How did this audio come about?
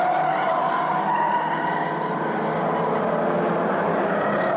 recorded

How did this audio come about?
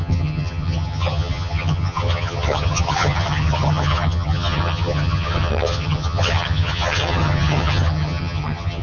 remade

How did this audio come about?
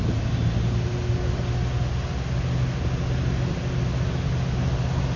recorded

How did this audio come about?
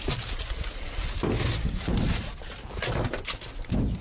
recorded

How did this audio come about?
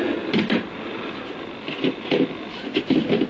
recorded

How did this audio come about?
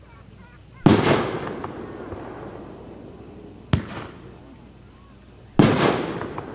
recorded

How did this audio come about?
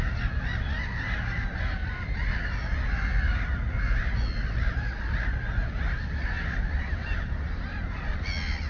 recorded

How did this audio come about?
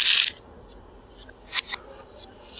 recorded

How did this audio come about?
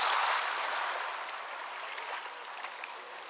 recorded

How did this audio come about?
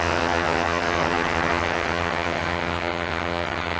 remade